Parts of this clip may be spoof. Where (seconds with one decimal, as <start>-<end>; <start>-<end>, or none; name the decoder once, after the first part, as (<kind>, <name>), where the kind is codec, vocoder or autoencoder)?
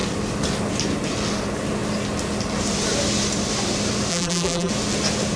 4.1-4.7 (vocoder, BigVGAN v2)